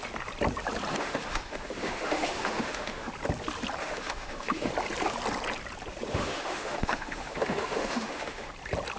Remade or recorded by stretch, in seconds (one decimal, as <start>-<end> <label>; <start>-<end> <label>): 0.0-0.9 recorded; 0.9-3.1 remade; 3.1-3.8 recorded; 3.8-4.7 remade; 4.7-6.1 recorded; 6.1-8.5 remade; 8.5-9.0 recorded